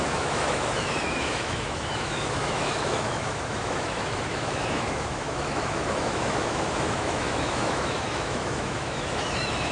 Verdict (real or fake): fake